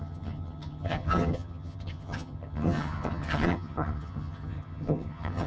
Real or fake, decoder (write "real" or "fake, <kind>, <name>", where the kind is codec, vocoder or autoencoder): fake, vocoder, HiFi-GAN